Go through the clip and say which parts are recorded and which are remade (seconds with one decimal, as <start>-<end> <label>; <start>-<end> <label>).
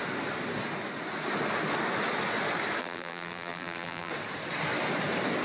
0.0-2.8 recorded; 2.8-4.1 remade; 4.1-5.4 recorded